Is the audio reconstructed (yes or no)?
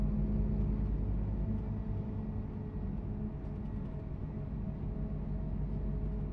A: no